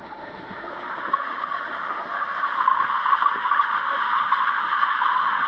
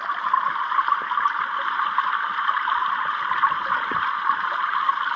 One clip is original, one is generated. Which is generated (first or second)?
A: first